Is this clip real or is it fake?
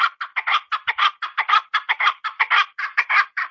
real